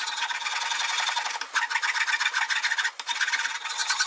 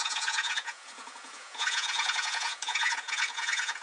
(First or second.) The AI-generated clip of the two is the second